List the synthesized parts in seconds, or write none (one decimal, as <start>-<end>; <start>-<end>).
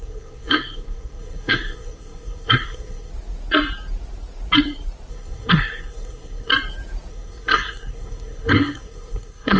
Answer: 0.0-3.1; 5.1-6.5; 7.1-9.6